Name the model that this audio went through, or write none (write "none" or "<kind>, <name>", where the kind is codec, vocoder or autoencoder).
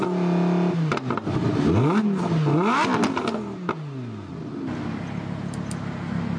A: none